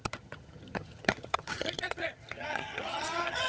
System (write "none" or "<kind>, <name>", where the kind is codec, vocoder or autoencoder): vocoder, HiFi-GAN